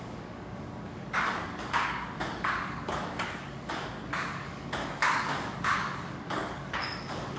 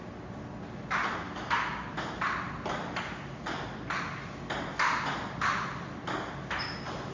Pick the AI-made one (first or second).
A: first